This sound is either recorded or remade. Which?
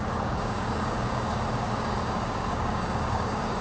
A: remade